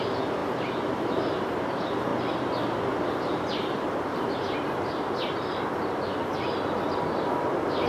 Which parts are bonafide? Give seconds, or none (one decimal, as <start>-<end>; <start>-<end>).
0.0-7.9